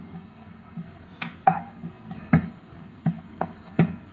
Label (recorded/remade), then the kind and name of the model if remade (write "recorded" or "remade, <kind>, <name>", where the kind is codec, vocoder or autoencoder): remade, codec, SNAC